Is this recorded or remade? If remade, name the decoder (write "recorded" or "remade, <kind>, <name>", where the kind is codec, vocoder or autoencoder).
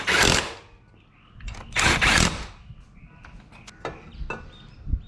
recorded